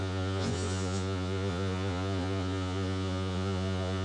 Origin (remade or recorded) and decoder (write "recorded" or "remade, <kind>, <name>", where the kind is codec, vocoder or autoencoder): remade, vocoder, Vocos